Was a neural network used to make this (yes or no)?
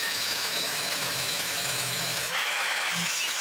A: yes